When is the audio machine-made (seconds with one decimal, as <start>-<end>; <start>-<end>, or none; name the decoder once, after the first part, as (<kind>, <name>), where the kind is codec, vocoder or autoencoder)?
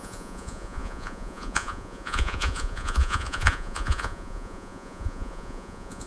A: 0.0-6.1 (vocoder, Vocos)